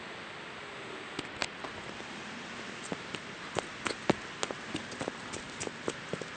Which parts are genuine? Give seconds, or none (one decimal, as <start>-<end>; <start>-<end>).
0.0-6.4